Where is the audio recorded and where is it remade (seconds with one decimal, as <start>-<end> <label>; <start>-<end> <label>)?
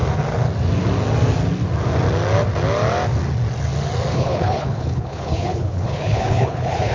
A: 0.0-4.1 recorded; 4.1-6.9 remade